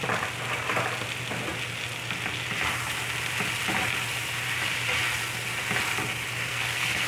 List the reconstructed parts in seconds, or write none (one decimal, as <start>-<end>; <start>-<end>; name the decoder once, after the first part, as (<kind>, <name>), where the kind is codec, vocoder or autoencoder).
6.5-7.1 (codec, SNAC)